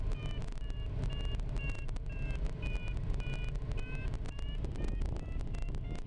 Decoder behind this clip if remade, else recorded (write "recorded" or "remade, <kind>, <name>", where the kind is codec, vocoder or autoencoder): recorded